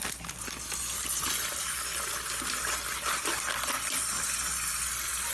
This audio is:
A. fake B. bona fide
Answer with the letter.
B